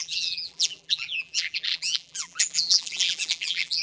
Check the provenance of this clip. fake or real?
fake